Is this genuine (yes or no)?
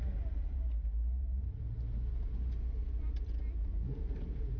yes